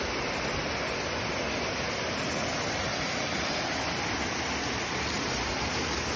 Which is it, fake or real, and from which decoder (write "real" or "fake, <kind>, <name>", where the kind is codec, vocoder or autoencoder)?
real